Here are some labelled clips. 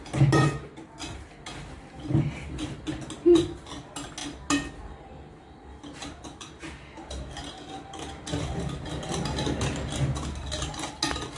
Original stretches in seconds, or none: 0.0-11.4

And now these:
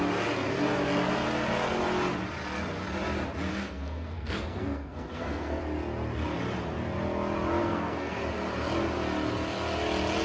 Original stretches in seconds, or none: 0.0-3.5; 5.6-7.6; 8.2-10.2

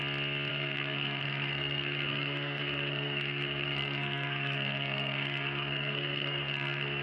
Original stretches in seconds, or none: 0.0-0.5

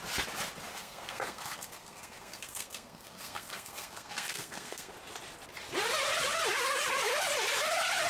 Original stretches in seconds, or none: 0.0-0.7; 4.9-8.1

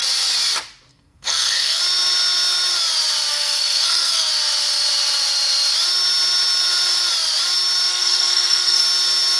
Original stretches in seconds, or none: 0.0-0.9; 1.8-3.3; 4.3-7.9; 8.8-9.4

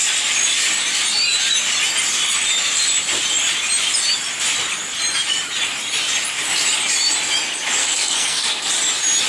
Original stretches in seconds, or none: 0.0-7.8; 8.7-9.3